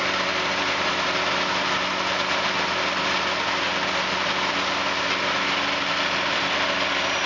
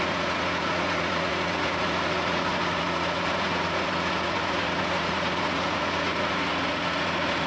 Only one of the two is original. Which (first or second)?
first